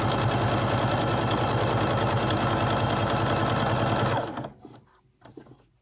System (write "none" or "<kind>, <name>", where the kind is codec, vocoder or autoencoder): none